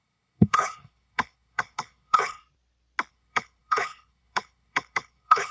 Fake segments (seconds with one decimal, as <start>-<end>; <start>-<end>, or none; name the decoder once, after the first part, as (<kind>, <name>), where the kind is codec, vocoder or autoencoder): 0.0-2.4 (codec, HILCodec); 3.1-5.5